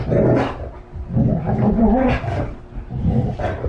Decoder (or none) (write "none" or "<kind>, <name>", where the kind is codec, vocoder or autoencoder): none